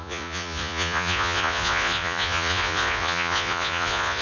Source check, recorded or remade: remade